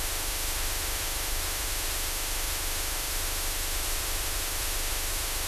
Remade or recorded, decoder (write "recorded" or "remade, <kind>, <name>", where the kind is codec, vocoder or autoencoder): remade, autoencoder, DAC-VAE